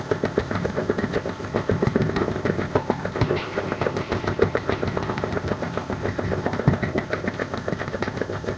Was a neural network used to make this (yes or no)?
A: yes